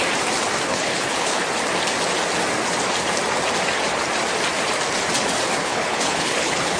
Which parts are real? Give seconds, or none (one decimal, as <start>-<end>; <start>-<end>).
0.0-0.7; 1.4-5.6